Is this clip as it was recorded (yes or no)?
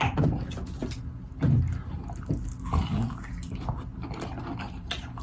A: yes